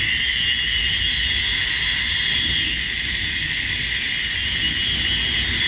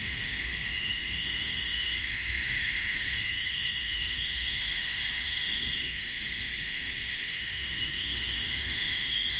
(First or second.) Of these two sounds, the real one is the first